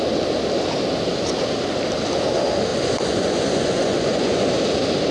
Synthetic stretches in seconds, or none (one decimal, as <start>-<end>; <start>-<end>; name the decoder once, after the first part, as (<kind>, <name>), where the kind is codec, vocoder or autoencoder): 2.7-4.5 (vocoder, Vocos)